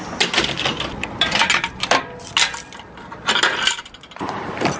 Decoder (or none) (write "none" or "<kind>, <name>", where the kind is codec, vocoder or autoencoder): none